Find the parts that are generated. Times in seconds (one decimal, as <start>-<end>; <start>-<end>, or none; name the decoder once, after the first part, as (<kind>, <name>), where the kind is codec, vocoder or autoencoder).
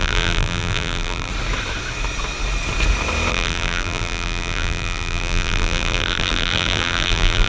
0.0-1.3 (vocoder, BigVGAN v2); 3.3-7.5